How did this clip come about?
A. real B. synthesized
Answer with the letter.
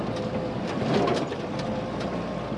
A